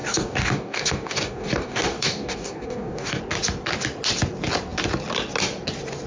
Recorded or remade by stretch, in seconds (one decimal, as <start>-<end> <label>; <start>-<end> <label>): 0.0-3.2 remade; 3.2-6.1 recorded